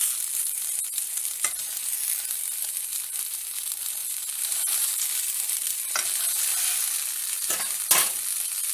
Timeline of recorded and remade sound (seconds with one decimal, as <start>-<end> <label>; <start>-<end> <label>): 0.0-6.5 remade; 6.5-7.2 recorded; 7.2-8.7 remade